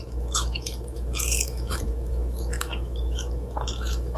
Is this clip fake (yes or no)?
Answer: yes